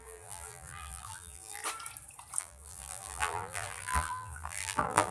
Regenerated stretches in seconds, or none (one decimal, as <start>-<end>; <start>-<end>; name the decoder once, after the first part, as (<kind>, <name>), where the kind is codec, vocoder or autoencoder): 0.0-1.6 (vocoder, BigVGAN v2); 2.4-5.1